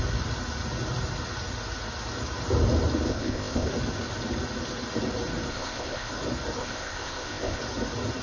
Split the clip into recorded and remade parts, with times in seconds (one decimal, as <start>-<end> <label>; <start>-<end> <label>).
0.0-3.1 recorded; 3.1-3.7 remade; 3.7-5.5 recorded; 5.5-6.1 remade; 6.1-6.6 recorded; 6.6-7.6 remade; 7.6-8.2 recorded